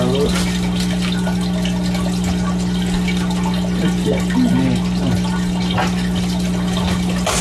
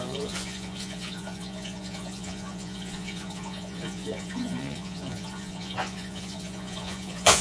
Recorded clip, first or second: first